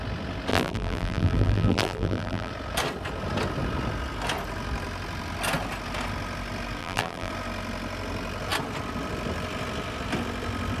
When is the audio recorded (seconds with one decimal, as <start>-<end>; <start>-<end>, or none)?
0.0-0.5; 2.5-6.8; 7.3-10.8